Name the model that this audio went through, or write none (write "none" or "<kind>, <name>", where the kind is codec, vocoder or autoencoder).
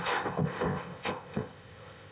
codec, ZipCodec